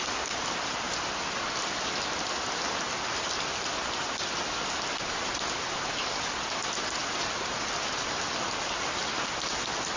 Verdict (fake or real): real